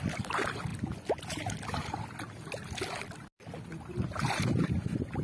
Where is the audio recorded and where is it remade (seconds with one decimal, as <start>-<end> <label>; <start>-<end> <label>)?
0.0-5.2 recorded